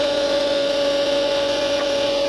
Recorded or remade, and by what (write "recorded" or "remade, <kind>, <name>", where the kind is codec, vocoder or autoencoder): remade, vocoder, Vocos